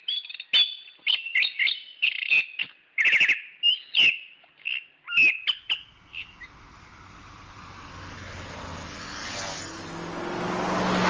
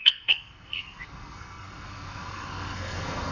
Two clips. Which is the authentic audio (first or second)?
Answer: first